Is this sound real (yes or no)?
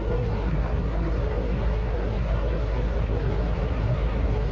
no